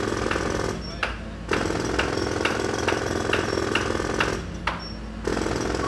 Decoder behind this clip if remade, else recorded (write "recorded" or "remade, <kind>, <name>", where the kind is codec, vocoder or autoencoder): recorded